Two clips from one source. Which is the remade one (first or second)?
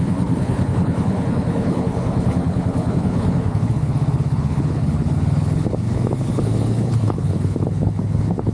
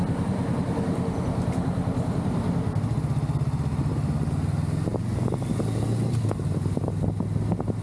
first